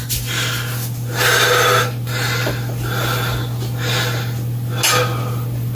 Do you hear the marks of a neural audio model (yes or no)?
no